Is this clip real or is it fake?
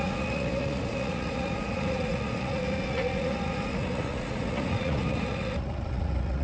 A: fake